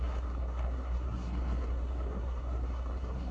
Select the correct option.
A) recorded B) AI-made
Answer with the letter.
B